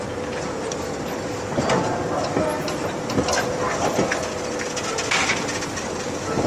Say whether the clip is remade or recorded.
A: recorded